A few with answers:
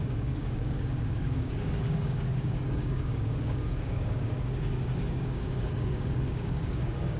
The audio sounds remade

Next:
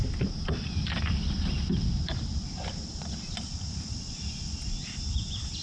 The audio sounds recorded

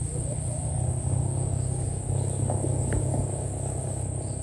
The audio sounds remade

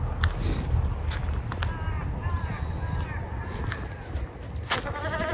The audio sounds recorded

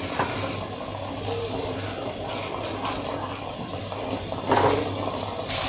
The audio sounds recorded